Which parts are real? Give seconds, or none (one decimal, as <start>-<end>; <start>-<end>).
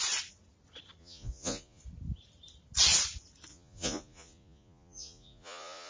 0.0-1.0; 1.8-3.5